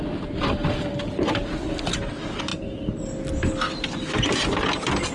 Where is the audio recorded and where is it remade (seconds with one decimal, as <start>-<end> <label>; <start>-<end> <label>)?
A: 0.0-0.6 recorded; 0.6-1.7 remade; 1.7-5.1 recorded